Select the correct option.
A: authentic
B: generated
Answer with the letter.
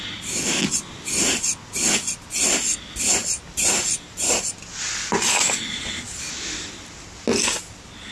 A